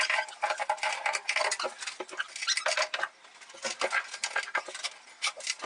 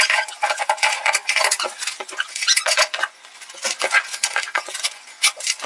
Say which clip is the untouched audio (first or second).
first